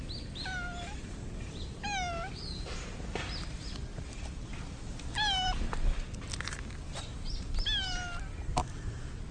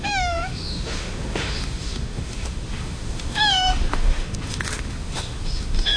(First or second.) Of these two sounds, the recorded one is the first